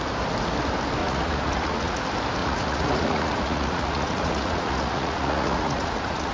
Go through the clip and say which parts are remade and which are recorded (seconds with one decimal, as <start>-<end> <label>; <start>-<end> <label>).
0.0-1.0 recorded; 1.0-2.0 remade; 2.0-2.4 recorded; 2.4-6.3 remade